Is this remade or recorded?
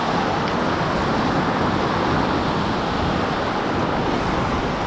recorded